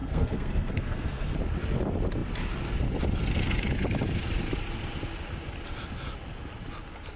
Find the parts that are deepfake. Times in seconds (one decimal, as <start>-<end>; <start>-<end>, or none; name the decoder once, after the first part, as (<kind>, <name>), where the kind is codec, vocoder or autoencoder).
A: 0.0-1.4 (codec, SNAC)